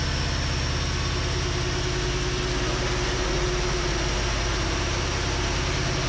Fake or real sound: real